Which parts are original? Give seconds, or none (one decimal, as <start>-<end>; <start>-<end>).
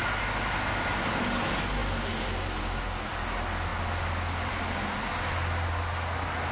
0.0-6.5